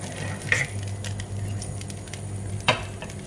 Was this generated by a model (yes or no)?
no